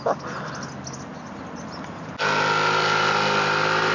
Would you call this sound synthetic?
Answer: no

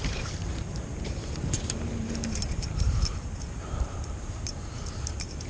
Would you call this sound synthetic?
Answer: yes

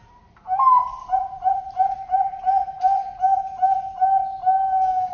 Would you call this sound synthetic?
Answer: no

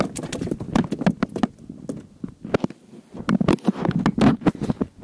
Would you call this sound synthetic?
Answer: no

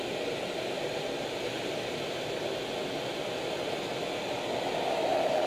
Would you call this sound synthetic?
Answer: no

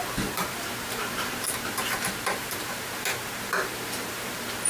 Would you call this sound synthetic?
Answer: yes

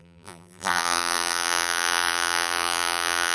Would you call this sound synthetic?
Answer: yes